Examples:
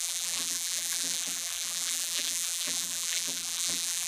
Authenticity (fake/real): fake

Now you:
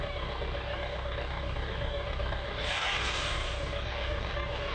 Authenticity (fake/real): fake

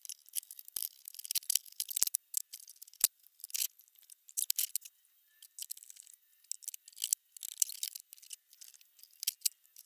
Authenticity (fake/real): real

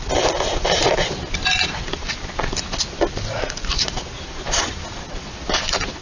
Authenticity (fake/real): real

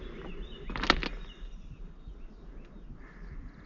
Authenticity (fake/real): real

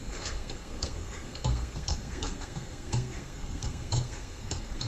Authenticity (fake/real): fake